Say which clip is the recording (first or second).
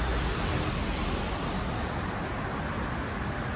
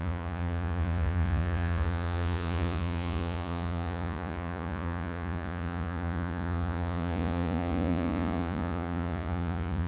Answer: first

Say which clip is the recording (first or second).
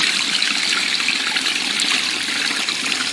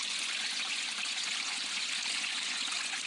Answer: first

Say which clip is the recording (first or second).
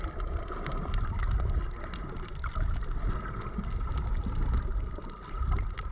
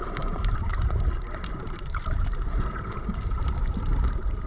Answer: first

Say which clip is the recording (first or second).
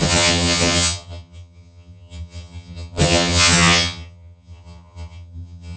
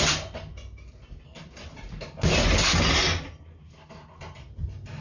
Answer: second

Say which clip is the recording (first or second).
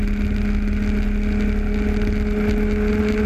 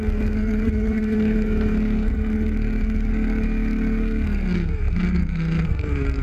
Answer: first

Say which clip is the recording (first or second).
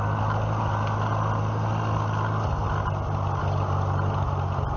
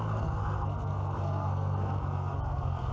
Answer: first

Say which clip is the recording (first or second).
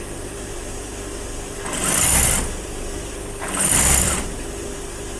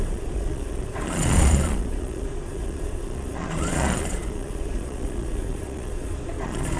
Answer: first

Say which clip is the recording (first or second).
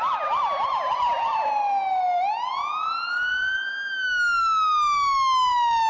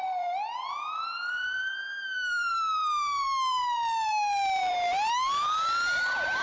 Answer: first